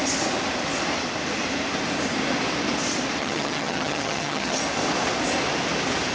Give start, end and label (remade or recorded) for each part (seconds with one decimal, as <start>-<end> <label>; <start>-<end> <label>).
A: 0.0-3.2 recorded; 3.2-4.6 remade; 4.6-6.1 recorded

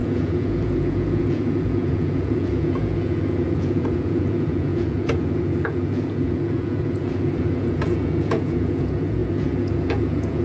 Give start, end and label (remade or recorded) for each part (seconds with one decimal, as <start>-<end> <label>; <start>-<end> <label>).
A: 0.0-10.4 remade

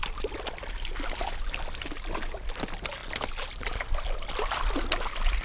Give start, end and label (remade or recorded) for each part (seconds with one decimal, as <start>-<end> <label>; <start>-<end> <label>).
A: 0.0-5.4 recorded

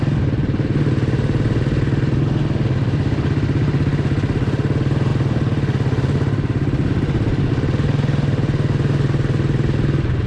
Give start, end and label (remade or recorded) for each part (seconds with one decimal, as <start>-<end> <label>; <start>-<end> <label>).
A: 0.0-10.3 recorded

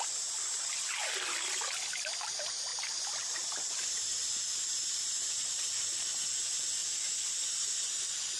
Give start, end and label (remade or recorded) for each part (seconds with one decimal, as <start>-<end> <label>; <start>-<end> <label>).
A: 0.0-8.4 recorded